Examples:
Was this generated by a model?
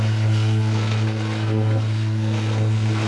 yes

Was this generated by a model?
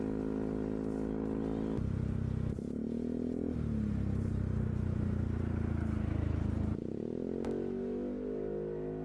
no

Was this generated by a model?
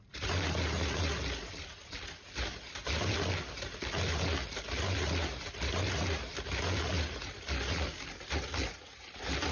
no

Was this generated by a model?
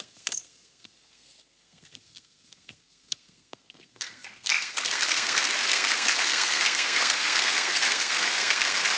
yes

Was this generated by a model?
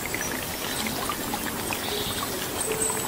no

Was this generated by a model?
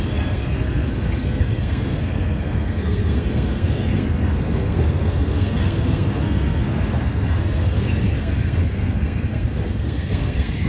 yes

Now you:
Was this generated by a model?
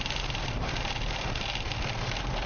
no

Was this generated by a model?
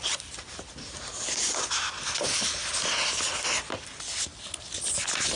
no